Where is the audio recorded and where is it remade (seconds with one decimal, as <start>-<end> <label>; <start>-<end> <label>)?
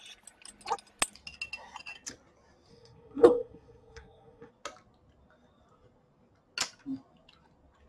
0.0-2.7 recorded; 2.7-4.5 remade; 4.5-7.9 recorded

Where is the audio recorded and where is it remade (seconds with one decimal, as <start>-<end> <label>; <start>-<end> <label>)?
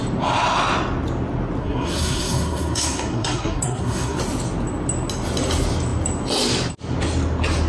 0.0-1.6 recorded; 1.6-4.2 remade; 4.2-7.7 recorded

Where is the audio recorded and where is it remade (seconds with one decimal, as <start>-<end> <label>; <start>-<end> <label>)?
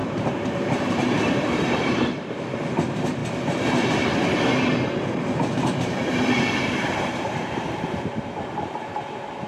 0.0-3.2 remade; 3.2-6.3 recorded; 6.3-9.5 remade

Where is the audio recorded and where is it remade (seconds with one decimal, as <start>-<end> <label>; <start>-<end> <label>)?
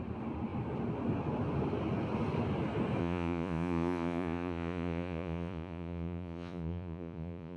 0.0-3.0 recorded; 3.0-7.6 remade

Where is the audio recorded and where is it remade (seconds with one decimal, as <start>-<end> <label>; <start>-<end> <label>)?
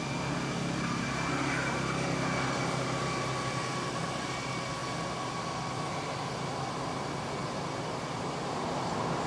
0.0-9.3 recorded